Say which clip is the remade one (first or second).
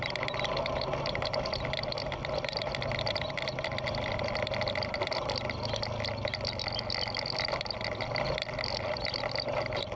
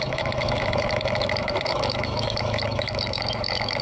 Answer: second